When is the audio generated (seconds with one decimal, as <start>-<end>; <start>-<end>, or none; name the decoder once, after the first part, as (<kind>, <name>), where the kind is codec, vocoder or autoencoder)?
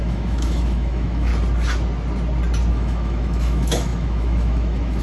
0.0-1.3 (autoencoder, DAC-VAE); 2.7-5.0